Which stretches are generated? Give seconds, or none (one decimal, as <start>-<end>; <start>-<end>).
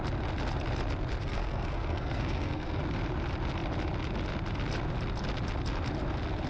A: 1.2-2.8